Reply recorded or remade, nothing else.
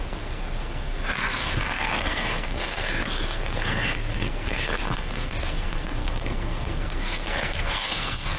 remade